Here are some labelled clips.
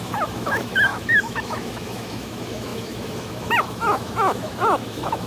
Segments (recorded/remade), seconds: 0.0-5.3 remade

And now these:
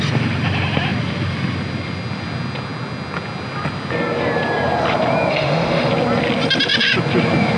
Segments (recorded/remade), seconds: 0.0-5.3 recorded; 5.3-5.9 remade; 5.9-7.6 recorded

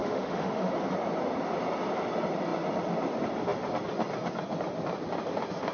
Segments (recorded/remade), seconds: 0.0-0.7 remade; 0.7-5.7 recorded

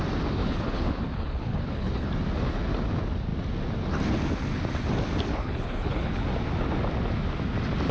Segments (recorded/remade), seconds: 0.0-0.4 recorded; 0.4-2.1 remade; 2.1-5.3 recorded; 5.3-6.2 remade; 6.2-7.9 recorded

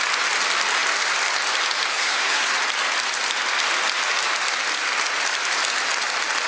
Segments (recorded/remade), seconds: 0.0-1.9 recorded; 1.9-2.5 remade; 2.5-6.5 recorded

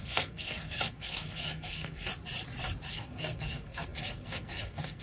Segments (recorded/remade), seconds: 0.0-2.1 remade; 2.1-2.9 recorded; 2.9-5.0 remade

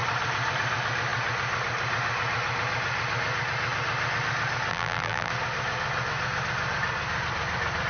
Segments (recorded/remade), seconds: 0.0-4.7 recorded; 4.7-5.3 remade; 5.3-7.9 recorded

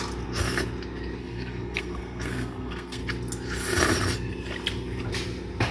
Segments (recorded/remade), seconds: 0.0-1.2 recorded; 1.2-3.0 remade; 3.0-5.7 recorded